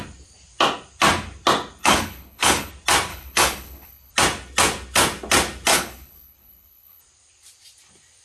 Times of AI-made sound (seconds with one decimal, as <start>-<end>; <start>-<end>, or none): 1.8-2.7; 3.1-4.1; 5.7-7.0